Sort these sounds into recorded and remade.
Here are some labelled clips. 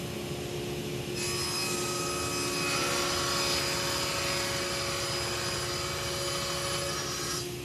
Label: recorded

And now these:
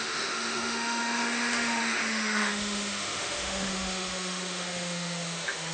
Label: remade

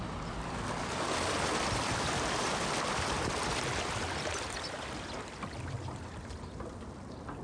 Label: recorded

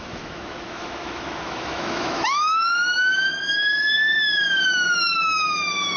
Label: remade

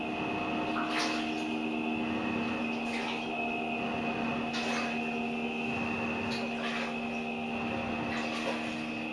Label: recorded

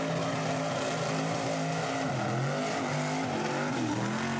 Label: recorded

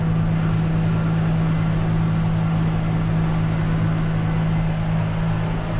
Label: recorded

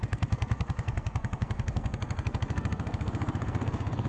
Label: remade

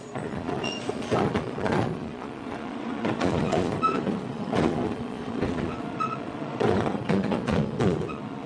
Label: remade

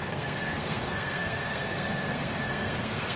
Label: remade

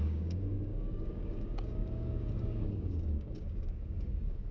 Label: remade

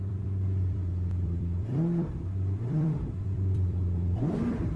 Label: remade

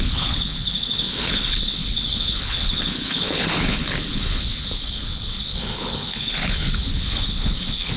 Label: remade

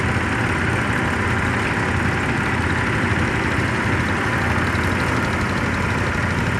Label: recorded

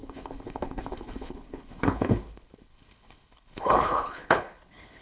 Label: remade